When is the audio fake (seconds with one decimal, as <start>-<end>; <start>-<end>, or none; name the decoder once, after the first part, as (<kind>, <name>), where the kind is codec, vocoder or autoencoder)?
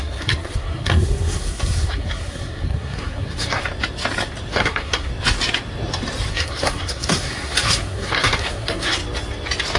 0.0-3.6 (codec, SNAC); 4.5-5.1; 6.3-9.0